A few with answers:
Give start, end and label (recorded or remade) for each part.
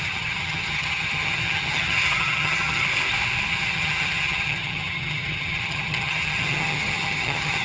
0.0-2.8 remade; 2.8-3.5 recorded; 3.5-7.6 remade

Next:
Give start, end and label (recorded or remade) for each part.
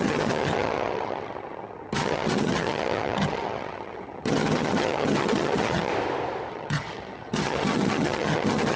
0.0-5.9 remade; 5.9-6.5 recorded; 6.5-8.8 remade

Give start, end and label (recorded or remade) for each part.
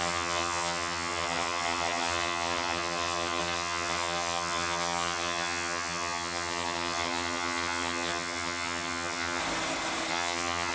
0.0-9.4 remade; 9.4-10.1 recorded; 10.1-10.7 remade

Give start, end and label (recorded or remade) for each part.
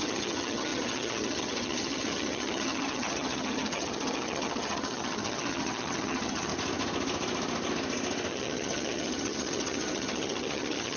0.0-6.5 remade; 6.5-8.3 recorded; 8.3-11.0 remade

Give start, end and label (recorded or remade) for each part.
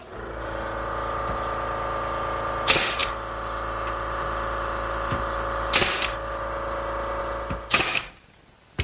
0.0-8.8 recorded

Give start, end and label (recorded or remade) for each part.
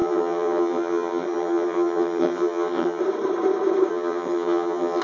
0.0-3.0 remade; 3.0-3.9 recorded; 3.9-5.0 remade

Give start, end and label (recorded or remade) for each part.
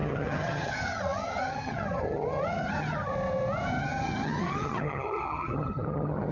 0.0-3.1 remade; 3.1-3.8 recorded; 3.8-6.3 remade